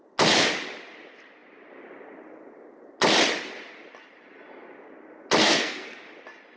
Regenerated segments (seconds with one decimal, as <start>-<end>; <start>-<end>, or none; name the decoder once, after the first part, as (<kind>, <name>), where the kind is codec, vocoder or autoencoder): 5.4-6.0 (codec, SNAC)